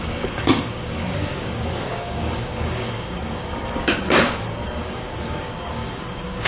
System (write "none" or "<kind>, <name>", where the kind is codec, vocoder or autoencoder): codec, DAC